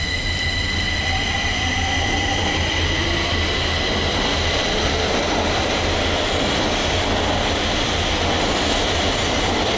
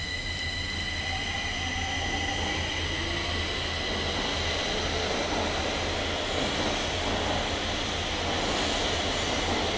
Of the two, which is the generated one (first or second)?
first